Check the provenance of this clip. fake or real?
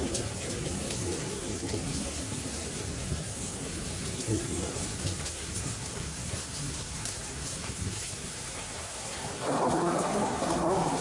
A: fake